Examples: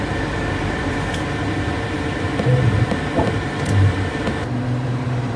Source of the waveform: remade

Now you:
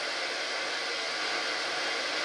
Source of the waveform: remade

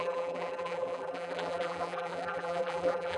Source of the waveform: remade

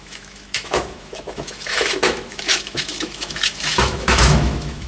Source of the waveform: remade